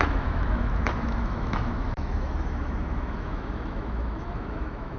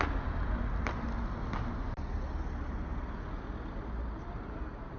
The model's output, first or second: first